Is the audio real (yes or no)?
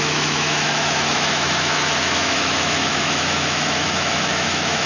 no